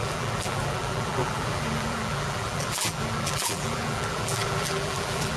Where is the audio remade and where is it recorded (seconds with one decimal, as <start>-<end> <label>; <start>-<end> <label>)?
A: 0.0-5.4 remade